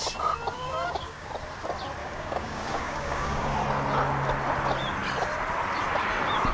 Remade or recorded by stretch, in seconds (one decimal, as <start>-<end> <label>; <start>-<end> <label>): 0.0-0.5 recorded; 0.5-1.3 remade; 1.3-2.0 recorded; 2.0-3.5 remade; 3.5-6.5 recorded